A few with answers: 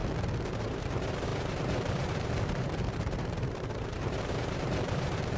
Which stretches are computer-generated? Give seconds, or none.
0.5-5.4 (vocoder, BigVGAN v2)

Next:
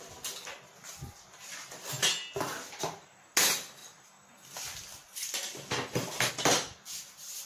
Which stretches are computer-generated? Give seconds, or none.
none

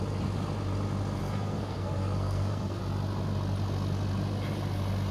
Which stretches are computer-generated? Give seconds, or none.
1.2-2.8 (codec, SNAC)

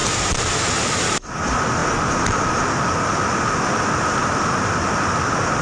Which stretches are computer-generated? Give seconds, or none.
none

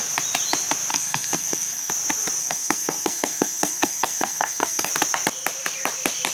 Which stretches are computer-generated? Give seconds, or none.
0.9-1.9 (codec, SNAC); 2.4-4.9

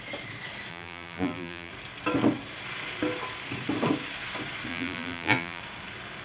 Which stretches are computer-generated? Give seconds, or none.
0.7-1.7 (vocoder, BigVGAN v2); 4.7-5.6

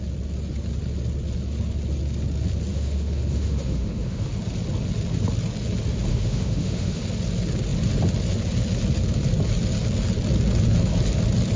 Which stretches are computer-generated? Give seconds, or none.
2.7-4.3 (autoencoder, DAC-VAE); 6.1-7.0